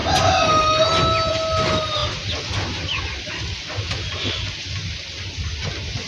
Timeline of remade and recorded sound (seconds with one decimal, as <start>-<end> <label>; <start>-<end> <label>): 0.0-6.1 recorded